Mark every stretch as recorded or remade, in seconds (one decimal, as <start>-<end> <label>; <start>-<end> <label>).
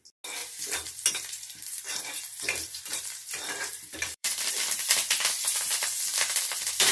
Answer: 0.0-0.4 recorded; 0.4-4.5 remade; 4.5-6.9 recorded